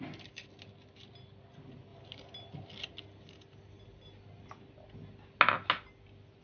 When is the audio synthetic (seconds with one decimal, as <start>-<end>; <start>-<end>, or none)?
none